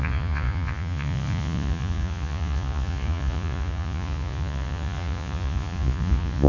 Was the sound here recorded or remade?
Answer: remade